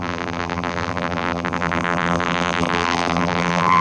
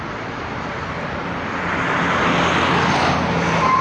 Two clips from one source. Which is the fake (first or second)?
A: first